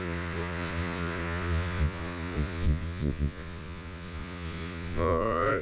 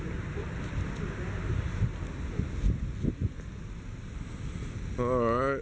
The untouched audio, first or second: second